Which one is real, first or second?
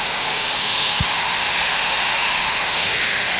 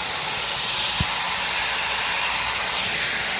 second